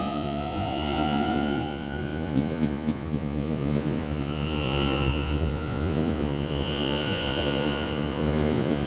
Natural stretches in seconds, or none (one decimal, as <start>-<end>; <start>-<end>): none